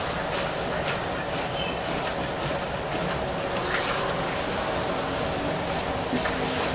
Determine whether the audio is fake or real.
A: real